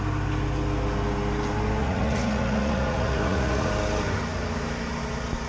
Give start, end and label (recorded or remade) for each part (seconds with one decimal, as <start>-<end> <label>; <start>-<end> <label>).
0.0-1.8 recorded; 1.8-3.7 remade; 3.7-5.5 recorded